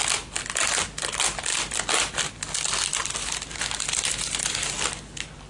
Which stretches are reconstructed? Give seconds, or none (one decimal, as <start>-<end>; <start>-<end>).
none